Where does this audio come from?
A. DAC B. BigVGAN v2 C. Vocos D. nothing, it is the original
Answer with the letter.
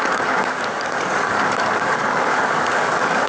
A